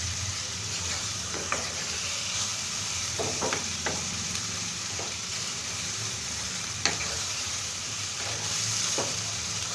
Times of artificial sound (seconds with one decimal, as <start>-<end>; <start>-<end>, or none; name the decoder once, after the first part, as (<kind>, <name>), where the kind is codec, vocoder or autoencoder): 0.0-9.7 (vocoder, BigVGAN v2)